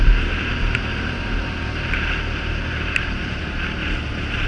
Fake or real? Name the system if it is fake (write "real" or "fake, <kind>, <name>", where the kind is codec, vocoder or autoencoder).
fake, vocoder, BigVGAN v2